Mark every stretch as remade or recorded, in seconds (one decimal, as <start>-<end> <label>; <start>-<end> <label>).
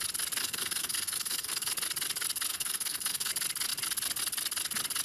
0.0-0.4 recorded; 0.4-1.7 remade; 1.7-2.5 recorded; 2.5-3.3 remade; 3.3-5.0 recorded